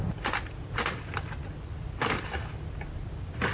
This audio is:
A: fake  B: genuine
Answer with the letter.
B